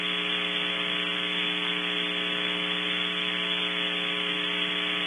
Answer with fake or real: real